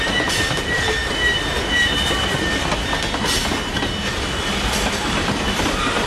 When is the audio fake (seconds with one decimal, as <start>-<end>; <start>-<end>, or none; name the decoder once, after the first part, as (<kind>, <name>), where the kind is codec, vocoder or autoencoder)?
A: 0.0-1.0 (vocoder, BigVGAN v2); 4.7-6.1